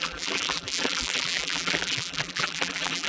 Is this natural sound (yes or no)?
no